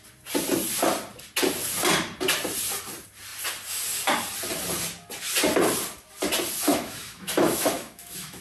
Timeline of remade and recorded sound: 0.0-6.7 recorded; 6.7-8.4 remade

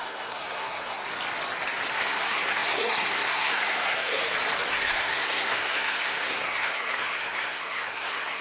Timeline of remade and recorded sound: 0.0-1.0 remade; 1.0-1.9 recorded; 1.9-4.2 remade; 4.2-4.7 recorded; 4.7-8.4 remade

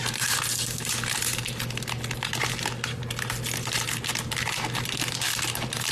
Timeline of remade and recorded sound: 0.0-5.9 recorded

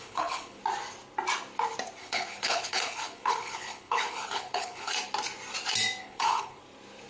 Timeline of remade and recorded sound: 0.0-0.6 remade; 0.6-2.0 recorded; 2.0-4.9 remade; 4.9-6.0 recorded; 6.0-6.6 remade; 6.6-7.1 recorded

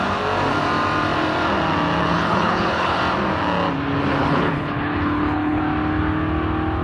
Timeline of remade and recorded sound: 0.0-2.0 recorded; 2.0-3.0 remade; 3.0-4.2 recorded; 4.2-5.6 remade; 5.6-6.8 recorded